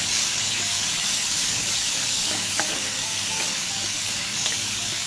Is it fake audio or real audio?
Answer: fake